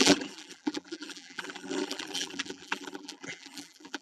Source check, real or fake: fake